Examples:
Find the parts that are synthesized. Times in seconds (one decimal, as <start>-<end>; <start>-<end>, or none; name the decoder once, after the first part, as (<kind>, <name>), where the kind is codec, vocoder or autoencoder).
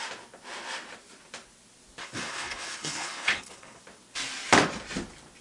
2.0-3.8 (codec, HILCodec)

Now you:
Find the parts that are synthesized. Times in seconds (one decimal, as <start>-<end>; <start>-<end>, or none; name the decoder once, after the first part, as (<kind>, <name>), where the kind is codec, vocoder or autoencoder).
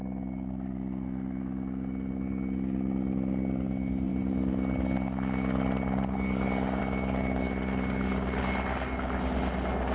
none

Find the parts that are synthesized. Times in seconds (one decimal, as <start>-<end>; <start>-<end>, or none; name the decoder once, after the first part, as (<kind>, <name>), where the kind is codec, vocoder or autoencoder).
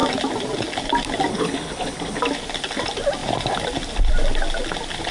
1.3-2.2 (codec, HILCodec)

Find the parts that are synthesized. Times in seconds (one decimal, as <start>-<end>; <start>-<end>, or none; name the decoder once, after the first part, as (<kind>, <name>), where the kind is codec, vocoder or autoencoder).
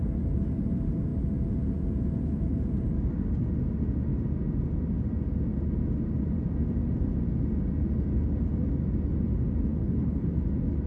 9.7-10.3 (codec, HILCodec)